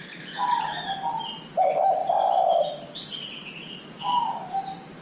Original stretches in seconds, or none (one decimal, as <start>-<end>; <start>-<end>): 0.0-5.0